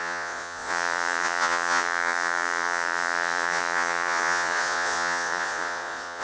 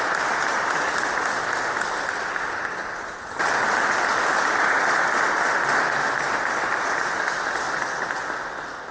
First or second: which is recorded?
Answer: second